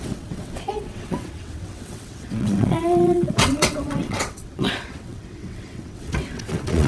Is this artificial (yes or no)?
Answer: yes